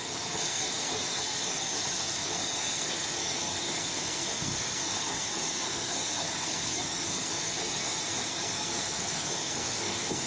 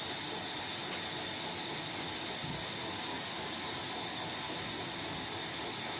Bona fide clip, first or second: second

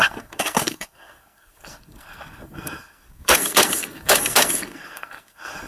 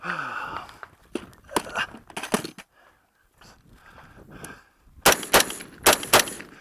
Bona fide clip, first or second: second